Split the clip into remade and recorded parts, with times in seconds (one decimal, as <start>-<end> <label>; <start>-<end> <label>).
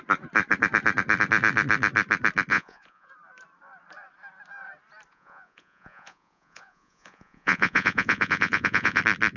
0.0-2.5 recorded; 2.5-3.1 remade; 3.1-5.1 recorded; 5.1-9.0 remade; 9.0-9.4 recorded